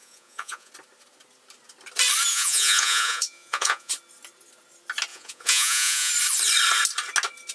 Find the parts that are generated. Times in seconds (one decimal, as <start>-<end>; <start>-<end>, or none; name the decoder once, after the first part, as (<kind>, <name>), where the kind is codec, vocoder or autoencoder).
0.0-0.7 (vocoder, Vocos); 2.3-3.9; 5.1-6.1